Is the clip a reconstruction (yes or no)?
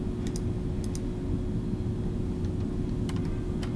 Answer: no